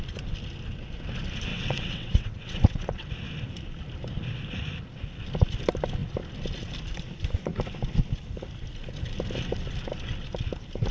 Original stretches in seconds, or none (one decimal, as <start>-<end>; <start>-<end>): 0.0-1.5; 3.1-10.9

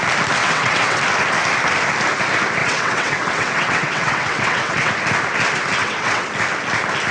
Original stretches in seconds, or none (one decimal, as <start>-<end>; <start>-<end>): 0.0-0.4; 1.0-2.6; 4.9-5.8; 6.3-7.1

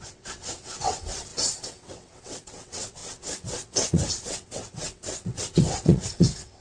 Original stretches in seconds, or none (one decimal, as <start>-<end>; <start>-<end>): none

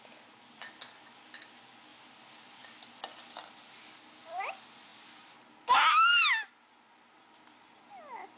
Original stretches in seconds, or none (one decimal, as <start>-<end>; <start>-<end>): 0.0-8.4

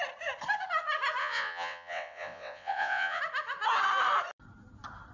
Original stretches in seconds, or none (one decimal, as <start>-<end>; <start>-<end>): 0.0-1.2; 3.2-5.1

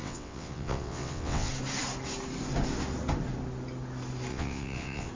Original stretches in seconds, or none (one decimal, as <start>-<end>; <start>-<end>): 1.5-4.3

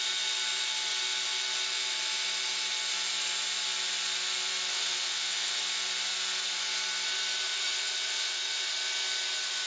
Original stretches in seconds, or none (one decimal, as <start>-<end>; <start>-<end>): 0.0-4.7; 5.6-7.5; 8.7-9.7